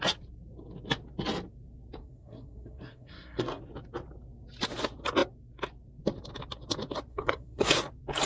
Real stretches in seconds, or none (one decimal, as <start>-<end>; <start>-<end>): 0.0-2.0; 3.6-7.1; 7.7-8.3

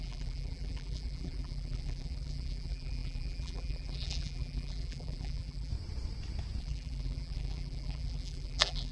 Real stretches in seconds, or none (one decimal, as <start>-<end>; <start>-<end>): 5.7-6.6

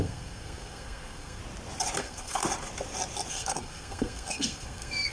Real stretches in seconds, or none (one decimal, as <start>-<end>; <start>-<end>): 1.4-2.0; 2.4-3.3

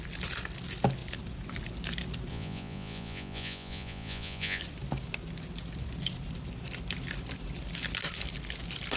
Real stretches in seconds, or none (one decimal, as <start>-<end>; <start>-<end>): 0.0-2.3; 4.6-9.0

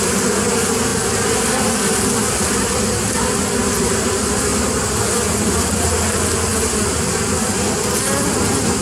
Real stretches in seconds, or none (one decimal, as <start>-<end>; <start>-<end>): 0.0-8.8

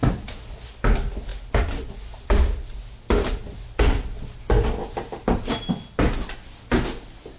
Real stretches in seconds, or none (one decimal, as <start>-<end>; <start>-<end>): 0.0-7.4

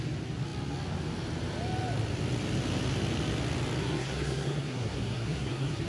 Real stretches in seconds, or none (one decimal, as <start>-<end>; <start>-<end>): 0.0-3.8

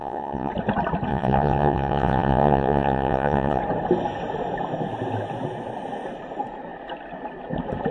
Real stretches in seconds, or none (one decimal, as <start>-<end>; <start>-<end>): 0.5-1.1; 3.6-7.9